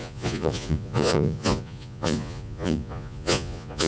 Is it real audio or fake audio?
fake